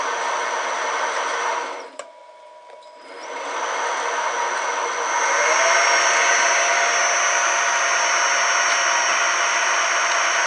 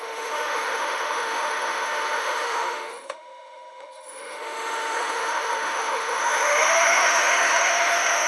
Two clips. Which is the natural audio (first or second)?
first